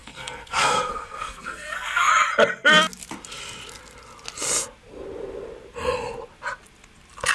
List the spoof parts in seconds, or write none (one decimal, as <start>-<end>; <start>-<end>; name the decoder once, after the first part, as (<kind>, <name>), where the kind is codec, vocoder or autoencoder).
0.0-2.1 (codec, SNAC)

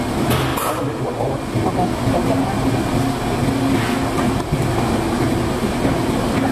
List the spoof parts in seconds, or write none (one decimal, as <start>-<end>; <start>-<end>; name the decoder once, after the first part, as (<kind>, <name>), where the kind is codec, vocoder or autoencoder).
none

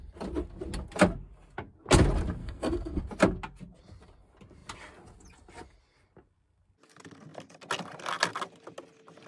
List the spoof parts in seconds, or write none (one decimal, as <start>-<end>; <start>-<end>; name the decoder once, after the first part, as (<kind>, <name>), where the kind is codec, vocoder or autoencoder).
2.4-3.0 (codec, SNAC)

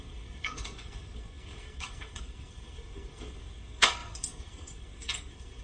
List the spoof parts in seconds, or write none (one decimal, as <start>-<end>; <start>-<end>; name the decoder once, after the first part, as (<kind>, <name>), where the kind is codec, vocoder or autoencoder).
0.0-5.6 (codec, SNAC)

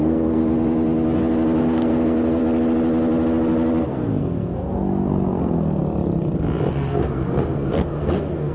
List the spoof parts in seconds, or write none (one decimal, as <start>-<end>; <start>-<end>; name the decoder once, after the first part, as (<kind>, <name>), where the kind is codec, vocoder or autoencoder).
0.0-0.4 (codec, SNAC); 1.6-2.4; 3.9-5.8; 6.7-8.5